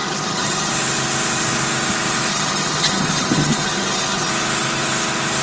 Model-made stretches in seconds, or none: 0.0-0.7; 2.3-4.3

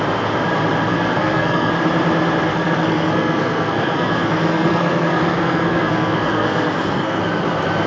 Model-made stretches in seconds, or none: 0.9-1.7; 2.5-7.2

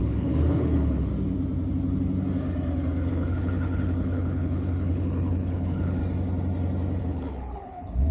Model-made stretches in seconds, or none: 0.0-1.1; 3.1-6.0; 7.0-8.1

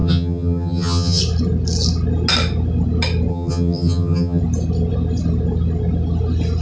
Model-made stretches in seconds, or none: 0.0-1.2; 3.3-4.4

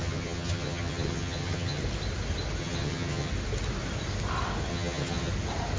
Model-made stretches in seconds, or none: 0.0-1.8; 2.6-3.3; 4.7-5.3

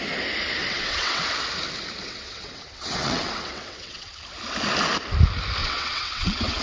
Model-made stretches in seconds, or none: 0.6-1.2; 2.0-4.1; 5.6-6.6